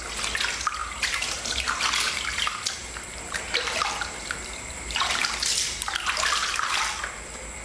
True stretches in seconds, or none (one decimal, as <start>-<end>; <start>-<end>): 0.0-0.8; 1.8-2.8; 7.0-7.6